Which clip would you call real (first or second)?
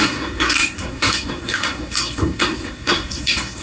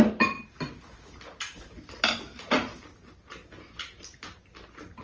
second